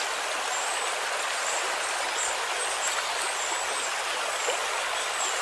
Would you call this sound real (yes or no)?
yes